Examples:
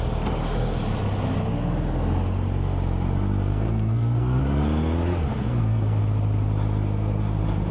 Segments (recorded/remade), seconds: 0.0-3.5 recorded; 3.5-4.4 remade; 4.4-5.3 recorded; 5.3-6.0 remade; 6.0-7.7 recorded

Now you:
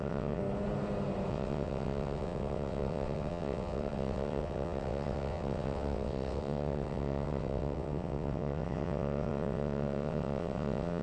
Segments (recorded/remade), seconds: 0.0-0.4 remade; 0.4-1.3 recorded; 1.3-11.0 remade

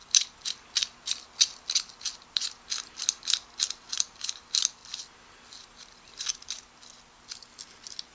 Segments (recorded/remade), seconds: 0.0-8.1 recorded

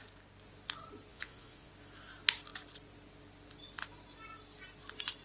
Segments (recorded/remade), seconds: 0.0-1.1 recorded; 1.1-1.7 remade; 1.7-5.2 recorded

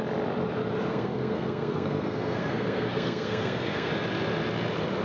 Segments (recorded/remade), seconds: 0.0-0.9 recorded; 0.9-3.9 remade; 3.9-5.0 recorded

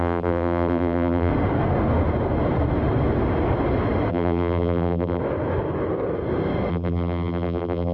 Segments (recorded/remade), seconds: 0.0-1.3 remade; 1.3-4.1 recorded; 4.1-5.2 remade; 5.2-6.7 recorded; 6.7-7.9 remade